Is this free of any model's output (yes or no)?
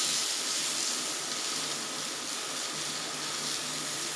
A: yes